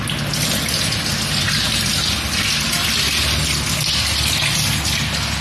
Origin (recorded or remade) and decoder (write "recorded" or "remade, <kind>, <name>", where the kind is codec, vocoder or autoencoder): recorded